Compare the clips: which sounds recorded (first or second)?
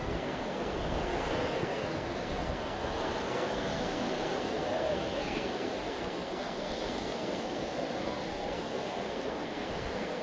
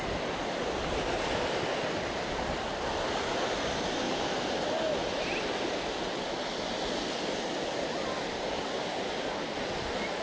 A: second